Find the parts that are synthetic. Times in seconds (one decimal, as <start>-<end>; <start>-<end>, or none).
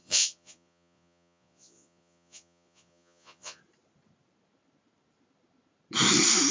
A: 0.0-3.6